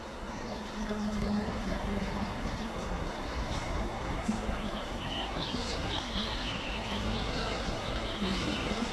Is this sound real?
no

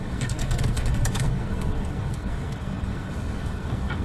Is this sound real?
no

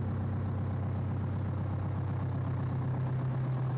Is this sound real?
yes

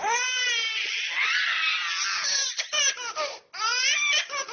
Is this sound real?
yes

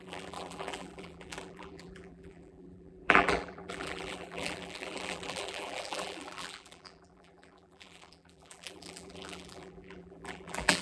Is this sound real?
no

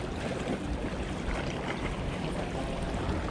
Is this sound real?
yes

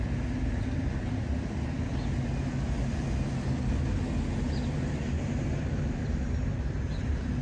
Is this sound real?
yes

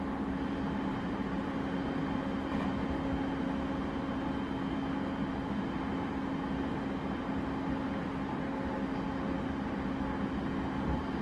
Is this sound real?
yes